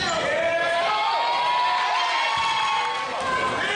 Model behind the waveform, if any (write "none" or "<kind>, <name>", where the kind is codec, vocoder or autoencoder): none